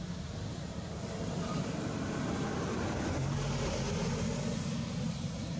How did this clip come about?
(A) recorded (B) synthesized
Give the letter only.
A